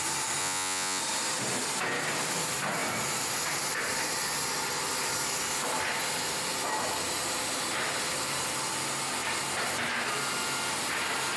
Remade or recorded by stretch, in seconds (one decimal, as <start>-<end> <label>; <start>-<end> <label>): 0.0-0.4 recorded; 0.4-1.0 remade; 1.0-11.4 recorded